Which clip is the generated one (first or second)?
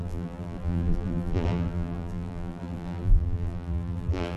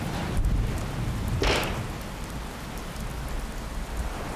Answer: first